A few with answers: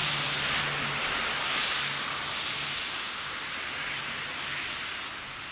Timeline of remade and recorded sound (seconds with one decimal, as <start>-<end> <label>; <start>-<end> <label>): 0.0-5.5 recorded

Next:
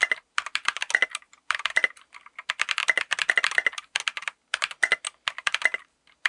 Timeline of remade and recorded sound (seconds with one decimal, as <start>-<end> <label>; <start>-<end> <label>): 0.0-6.3 recorded

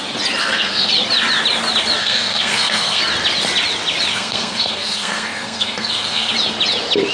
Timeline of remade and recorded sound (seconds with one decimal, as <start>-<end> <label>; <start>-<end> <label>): 0.0-0.4 recorded; 0.4-0.9 remade; 0.9-2.0 recorded; 2.0-3.0 remade; 3.0-4.1 recorded; 4.1-6.3 remade; 6.3-7.1 recorded